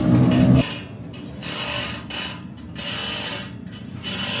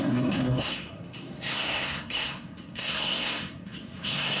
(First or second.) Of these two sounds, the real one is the first